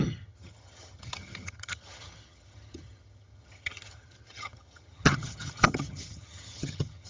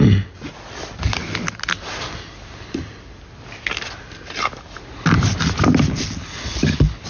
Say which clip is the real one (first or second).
second